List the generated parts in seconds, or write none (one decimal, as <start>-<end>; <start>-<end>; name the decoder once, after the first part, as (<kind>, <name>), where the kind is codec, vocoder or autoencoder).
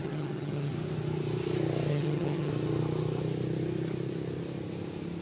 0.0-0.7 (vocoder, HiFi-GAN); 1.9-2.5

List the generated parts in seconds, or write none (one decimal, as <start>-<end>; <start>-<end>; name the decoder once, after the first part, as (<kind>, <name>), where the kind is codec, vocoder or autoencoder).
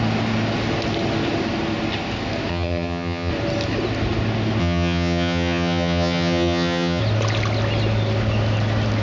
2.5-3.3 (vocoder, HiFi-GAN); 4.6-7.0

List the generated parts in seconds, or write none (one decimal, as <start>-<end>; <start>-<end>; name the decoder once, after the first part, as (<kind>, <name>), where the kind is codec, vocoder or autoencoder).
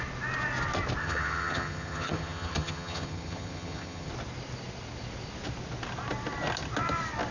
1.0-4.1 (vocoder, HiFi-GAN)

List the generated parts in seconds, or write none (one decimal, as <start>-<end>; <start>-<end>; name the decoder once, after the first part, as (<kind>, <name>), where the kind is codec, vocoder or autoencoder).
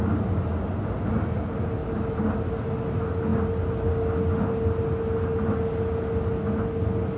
none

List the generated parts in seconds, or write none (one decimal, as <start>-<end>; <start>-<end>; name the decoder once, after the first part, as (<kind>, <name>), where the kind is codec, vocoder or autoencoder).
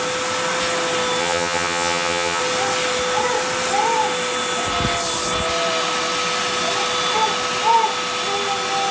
1.2-2.4 (vocoder, HiFi-GAN)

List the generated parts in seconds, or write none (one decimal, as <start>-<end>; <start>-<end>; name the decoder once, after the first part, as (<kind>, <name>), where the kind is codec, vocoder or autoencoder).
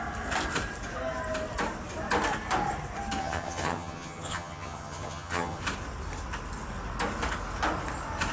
3.2-5.6 (vocoder, HiFi-GAN)